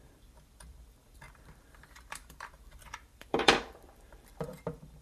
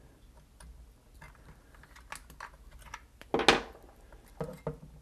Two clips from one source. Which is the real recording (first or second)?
second